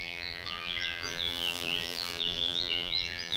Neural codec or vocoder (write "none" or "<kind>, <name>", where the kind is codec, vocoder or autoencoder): vocoder, BigVGAN v2